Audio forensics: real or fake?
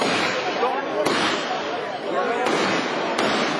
real